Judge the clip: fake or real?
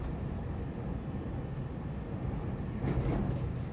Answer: real